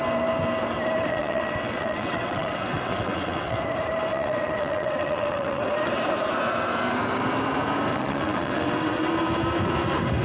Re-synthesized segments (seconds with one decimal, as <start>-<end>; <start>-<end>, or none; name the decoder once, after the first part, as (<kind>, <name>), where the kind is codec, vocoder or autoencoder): 1.1-3.6 (vocoder, WaveNeXt); 4.1-5.6; 7.9-9.1